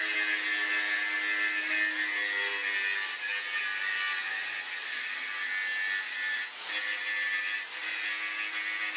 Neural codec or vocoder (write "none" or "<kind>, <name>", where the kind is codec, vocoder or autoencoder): none